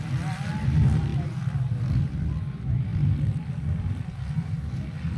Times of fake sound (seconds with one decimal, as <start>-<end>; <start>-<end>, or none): none